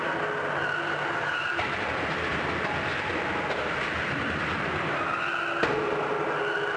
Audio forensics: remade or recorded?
recorded